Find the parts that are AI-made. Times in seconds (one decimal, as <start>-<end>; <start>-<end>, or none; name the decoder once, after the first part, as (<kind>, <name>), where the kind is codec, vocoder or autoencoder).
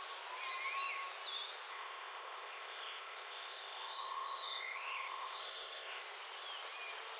1.7-6.0 (codec, ZipCodec)